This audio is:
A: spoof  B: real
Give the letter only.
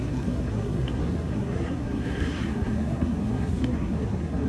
A